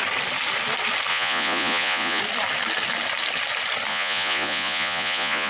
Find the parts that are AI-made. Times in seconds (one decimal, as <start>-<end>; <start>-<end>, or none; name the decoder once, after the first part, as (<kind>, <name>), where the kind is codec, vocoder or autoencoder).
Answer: 1.1-2.2 (vocoder, Vocos); 3.9-5.5